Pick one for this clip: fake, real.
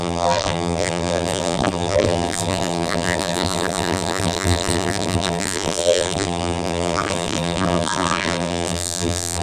fake